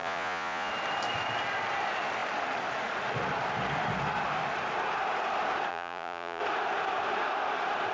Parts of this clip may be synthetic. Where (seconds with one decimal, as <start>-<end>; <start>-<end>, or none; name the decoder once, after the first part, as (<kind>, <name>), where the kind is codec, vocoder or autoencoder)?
0.0-0.7 (vocoder, Vocos); 5.7-6.4